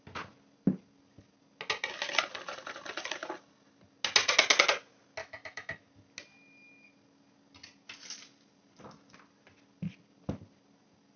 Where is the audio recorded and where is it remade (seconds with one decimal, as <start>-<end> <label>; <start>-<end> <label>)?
0.0-5.2 recorded; 5.2-5.8 remade; 5.8-11.2 recorded